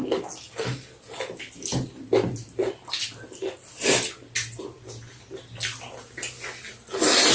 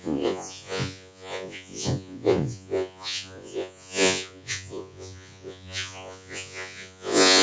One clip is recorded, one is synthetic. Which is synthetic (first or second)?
second